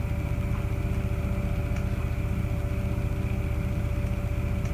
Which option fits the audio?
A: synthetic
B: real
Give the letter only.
B